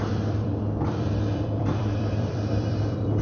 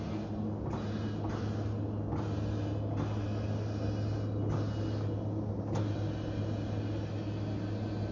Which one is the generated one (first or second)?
first